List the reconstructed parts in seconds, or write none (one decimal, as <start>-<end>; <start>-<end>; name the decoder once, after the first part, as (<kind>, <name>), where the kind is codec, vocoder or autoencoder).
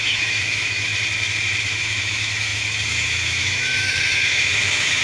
0.0-0.9 (autoencoder, DAC-VAE); 1.6-5.0